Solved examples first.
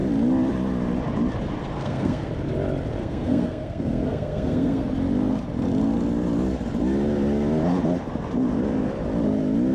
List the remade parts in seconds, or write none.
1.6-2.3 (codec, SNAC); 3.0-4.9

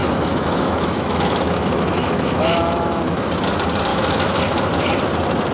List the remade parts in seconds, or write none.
0.0-3.3 (autoencoder, DAC-VAE); 3.9-4.4

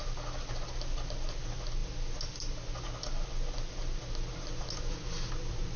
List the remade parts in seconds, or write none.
none

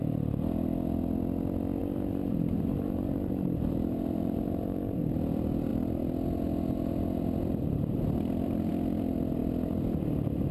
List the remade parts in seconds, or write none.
1.8-5.0 (vocoder, BigVGAN v2)

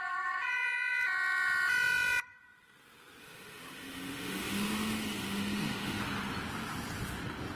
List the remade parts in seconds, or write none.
3.2-6.0 (autoencoder, DAC-VAE)

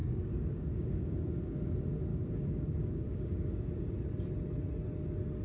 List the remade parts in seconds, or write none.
0.0-1.7 (codec, DAC); 2.1-3.8

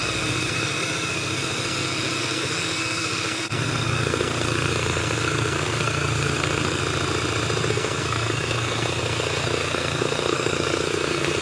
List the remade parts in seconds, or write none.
0.0-6.8 (codec, SNAC); 7.7-11.4